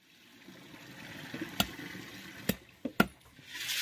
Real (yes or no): yes